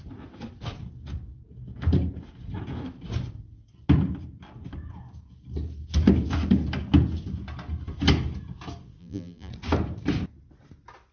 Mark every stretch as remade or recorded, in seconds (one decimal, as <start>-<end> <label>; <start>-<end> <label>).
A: 0.0-9.0 recorded; 9.0-9.5 remade; 9.5-11.1 recorded